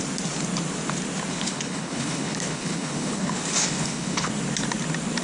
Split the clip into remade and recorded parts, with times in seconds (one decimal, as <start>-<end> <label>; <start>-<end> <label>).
0.0-1.3 recorded; 1.3-4.3 remade; 4.3-5.2 recorded